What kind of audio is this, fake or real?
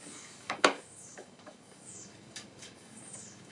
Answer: fake